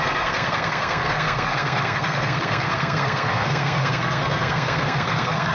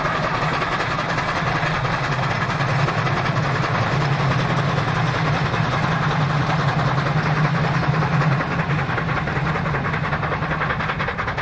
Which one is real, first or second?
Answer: second